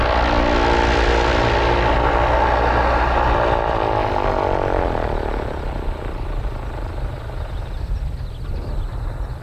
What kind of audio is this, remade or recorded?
recorded